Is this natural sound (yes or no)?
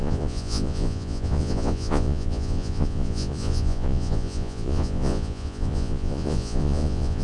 no